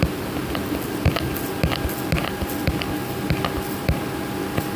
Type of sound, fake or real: real